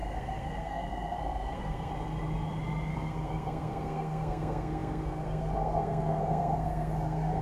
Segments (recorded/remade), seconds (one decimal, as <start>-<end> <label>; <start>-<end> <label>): 0.0-1.9 remade; 1.9-2.9 recorded; 2.9-7.4 remade